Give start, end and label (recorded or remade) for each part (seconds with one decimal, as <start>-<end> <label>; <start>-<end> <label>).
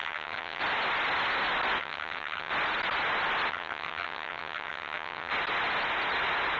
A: 0.0-0.6 remade; 0.6-1.8 recorded; 1.8-2.5 remade; 2.5-3.5 recorded; 3.5-5.3 remade; 5.3-6.6 recorded